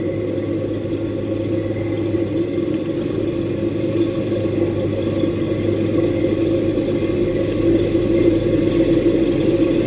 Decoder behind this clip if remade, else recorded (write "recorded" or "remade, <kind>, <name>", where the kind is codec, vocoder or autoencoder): recorded